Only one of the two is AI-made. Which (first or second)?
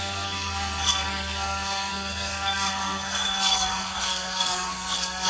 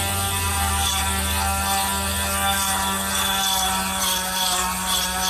first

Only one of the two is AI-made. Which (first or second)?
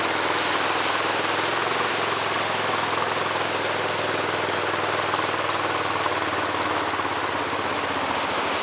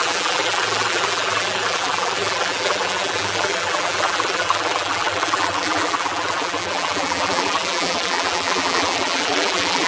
second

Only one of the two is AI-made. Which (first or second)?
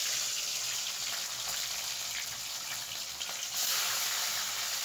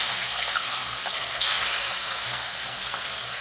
second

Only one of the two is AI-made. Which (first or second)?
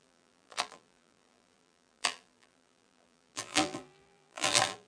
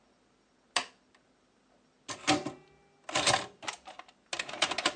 first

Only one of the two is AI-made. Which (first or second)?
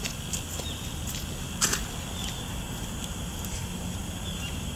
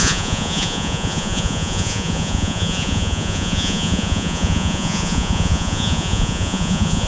second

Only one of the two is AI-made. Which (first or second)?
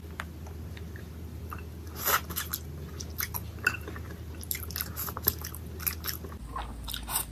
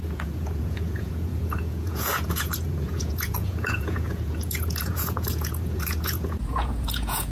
second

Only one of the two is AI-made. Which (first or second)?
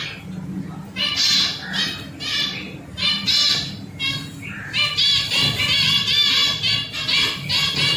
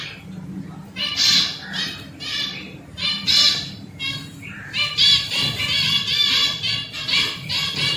second